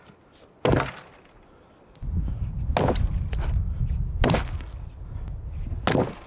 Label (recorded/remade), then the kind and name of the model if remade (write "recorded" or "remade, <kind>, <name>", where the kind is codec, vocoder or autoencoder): recorded